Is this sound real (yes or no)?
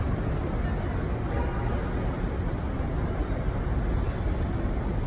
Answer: yes